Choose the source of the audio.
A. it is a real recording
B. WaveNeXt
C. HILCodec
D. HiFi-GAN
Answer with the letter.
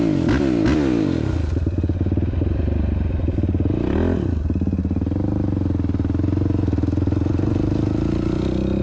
A